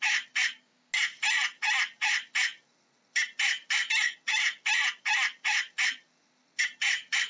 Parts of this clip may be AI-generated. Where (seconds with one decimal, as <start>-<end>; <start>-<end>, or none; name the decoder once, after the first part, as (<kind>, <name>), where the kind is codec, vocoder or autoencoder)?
none